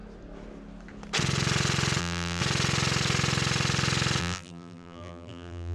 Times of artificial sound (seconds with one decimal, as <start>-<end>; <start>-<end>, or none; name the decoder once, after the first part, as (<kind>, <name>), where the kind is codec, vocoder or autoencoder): 2.0-2.4 (vocoder, BigVGAN v2); 4.2-5.7